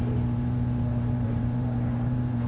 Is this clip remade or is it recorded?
remade